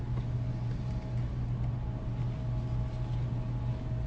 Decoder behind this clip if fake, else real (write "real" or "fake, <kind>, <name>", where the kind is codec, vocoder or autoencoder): real